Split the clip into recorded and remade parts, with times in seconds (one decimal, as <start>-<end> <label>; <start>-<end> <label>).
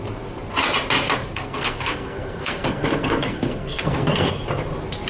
0.0-1.2 recorded; 1.2-4.3 remade; 4.3-5.1 recorded